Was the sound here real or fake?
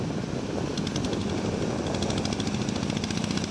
real